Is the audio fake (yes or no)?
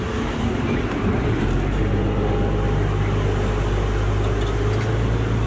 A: no